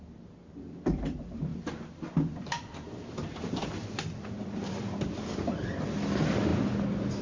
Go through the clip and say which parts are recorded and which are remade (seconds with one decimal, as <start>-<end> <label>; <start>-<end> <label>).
0.0-1.5 recorded; 1.5-5.8 remade; 5.8-7.2 recorded